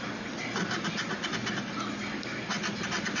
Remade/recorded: recorded